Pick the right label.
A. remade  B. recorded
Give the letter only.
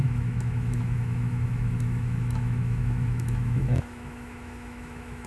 A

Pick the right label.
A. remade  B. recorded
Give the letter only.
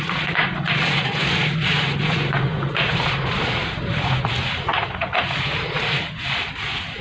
A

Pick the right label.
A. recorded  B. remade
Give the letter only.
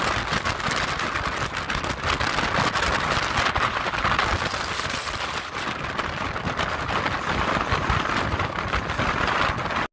A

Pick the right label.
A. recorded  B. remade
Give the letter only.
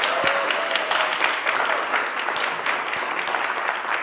A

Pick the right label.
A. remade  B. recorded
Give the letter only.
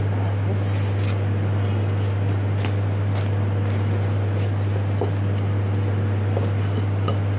B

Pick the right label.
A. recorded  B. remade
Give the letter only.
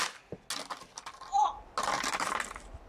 A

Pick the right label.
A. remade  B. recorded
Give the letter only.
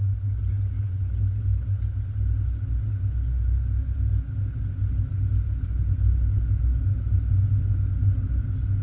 B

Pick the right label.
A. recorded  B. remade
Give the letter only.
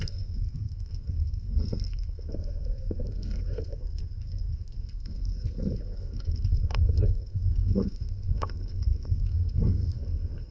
B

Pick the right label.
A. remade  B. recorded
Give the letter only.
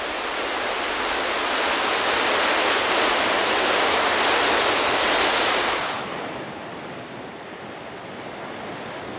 B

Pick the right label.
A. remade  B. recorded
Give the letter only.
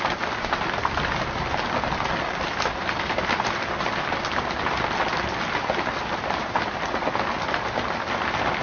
B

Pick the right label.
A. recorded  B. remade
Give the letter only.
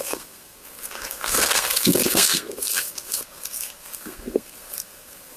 B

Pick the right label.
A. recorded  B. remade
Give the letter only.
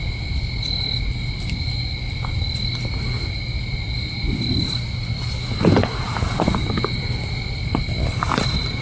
A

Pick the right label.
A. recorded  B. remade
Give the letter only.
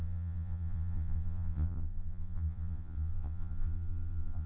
B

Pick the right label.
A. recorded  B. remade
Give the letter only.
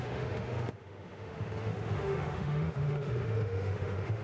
B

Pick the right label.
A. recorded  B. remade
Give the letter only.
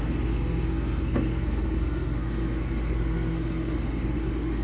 B